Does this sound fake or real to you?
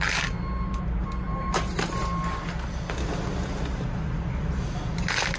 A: real